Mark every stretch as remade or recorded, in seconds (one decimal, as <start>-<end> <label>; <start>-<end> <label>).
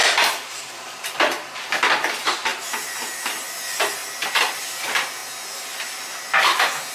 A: 0.0-2.5 remade; 2.5-3.1 recorded; 3.1-4.0 remade; 4.0-4.6 recorded; 4.6-5.2 remade; 5.2-6.9 recorded